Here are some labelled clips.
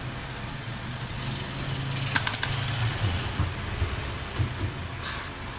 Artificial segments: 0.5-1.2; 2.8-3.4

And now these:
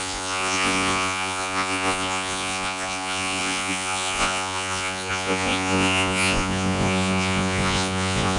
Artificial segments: 0.0-8.4